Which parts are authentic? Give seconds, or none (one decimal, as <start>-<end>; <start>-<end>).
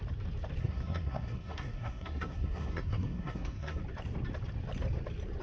0.0-0.6; 3.8-5.4